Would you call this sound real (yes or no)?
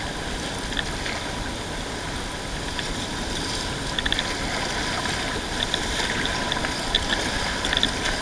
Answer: yes